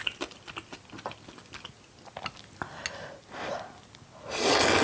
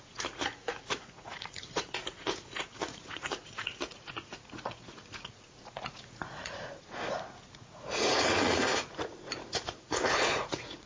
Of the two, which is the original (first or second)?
first